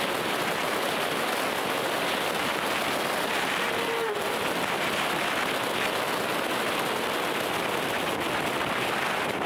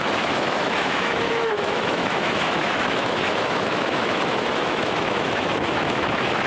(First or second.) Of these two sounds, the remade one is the second